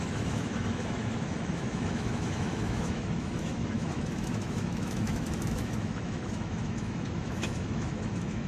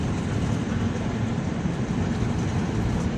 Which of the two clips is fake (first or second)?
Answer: first